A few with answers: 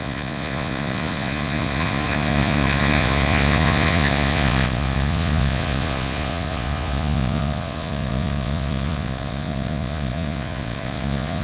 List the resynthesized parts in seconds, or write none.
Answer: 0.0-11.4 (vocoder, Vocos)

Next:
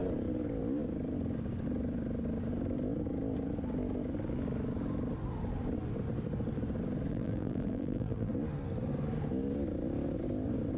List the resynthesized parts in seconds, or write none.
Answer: 7.1-8.3 (vocoder, BigVGAN v2)

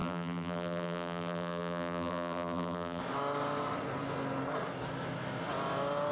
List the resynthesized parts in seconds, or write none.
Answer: 0.0-3.0 (vocoder, BigVGAN v2)

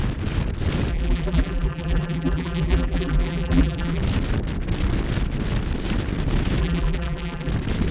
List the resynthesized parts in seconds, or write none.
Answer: 0.9-4.0 (vocoder, BigVGAN v2); 6.6-7.5